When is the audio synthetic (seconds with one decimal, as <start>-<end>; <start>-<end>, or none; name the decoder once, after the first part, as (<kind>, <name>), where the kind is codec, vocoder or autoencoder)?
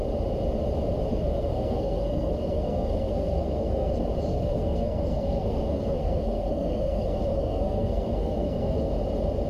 1.1-3.9 (codec, SNAC); 4.3-8.9